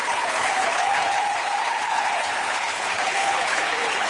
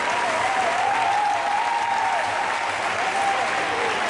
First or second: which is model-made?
first